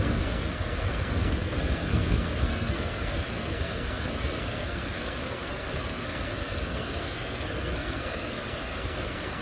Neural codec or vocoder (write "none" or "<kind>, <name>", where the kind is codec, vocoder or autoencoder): codec, SNAC